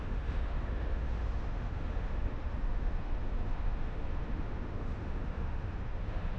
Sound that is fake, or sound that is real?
fake